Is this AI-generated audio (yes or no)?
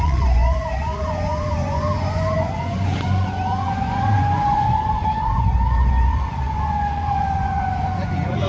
yes